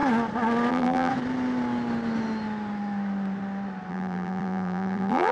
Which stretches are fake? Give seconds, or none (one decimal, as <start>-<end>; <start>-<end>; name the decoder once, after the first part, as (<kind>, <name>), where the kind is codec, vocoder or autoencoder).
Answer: 0.7-1.1 (vocoder, BigVGAN v2); 3.9-5.3

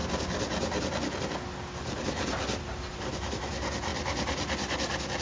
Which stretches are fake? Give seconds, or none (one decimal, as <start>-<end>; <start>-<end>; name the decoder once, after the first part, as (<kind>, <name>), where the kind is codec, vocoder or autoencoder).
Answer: 2.9-3.5 (vocoder, BigVGAN v2)

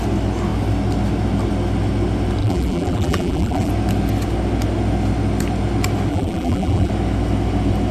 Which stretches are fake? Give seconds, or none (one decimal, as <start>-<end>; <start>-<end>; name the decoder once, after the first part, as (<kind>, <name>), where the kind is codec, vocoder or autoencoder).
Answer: 2.4-3.7 (vocoder, BigVGAN v2); 6.1-6.9

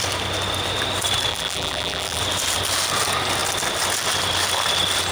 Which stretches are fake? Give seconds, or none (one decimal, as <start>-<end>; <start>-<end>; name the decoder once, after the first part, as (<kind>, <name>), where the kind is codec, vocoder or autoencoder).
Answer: 1.3-2.2 (vocoder, BigVGAN v2)

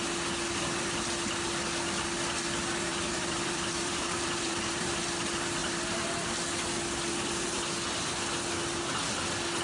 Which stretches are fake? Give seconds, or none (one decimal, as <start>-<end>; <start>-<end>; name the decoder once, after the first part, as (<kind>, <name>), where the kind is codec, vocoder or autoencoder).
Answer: 2.9-4.9 (vocoder, BigVGAN v2); 5.6-6.3

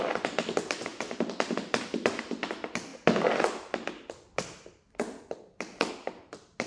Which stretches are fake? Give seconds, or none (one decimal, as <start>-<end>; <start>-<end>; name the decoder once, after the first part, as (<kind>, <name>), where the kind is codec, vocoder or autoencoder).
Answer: none